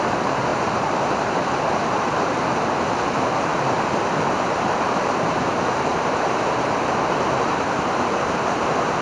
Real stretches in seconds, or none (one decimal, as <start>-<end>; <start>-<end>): 3.5-4.4